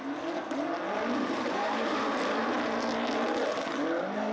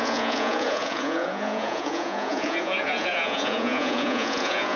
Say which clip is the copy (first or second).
second